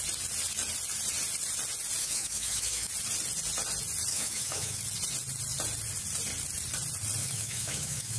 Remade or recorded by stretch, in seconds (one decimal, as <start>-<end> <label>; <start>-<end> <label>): 0.0-2.0 recorded; 2.0-2.9 remade; 2.9-4.1 recorded; 4.1-4.8 remade; 4.8-7.2 recorded; 7.2-8.2 remade